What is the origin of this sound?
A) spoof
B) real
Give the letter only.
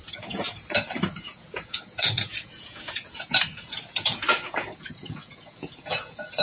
A